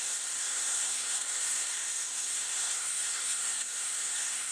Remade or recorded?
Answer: remade